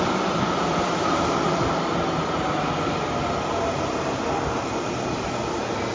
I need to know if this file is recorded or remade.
recorded